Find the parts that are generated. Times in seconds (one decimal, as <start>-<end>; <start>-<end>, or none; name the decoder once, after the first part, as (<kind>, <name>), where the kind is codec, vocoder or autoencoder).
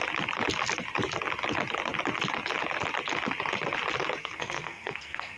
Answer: 4.2-5.4 (codec, SNAC)